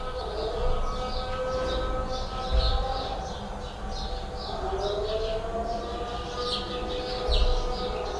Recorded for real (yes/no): yes